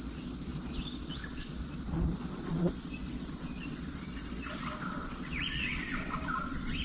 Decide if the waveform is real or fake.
fake